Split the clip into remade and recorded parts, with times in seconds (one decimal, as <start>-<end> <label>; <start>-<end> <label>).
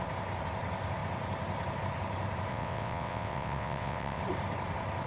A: 0.0-2.5 recorded; 2.5-4.2 remade; 4.2-5.1 recorded